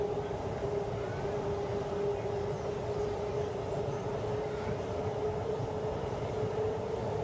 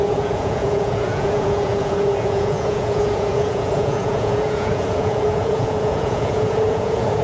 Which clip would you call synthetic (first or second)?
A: second